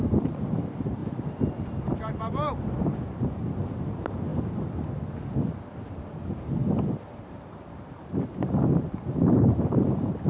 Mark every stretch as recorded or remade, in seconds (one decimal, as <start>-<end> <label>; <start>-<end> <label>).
0.0-1.0 remade; 1.0-1.6 recorded; 1.6-4.3 remade; 4.3-7.2 recorded; 7.2-10.3 remade